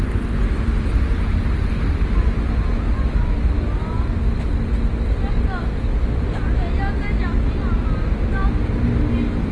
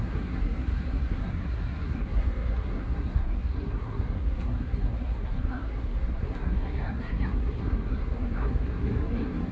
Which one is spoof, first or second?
second